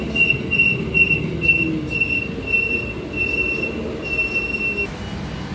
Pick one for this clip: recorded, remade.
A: recorded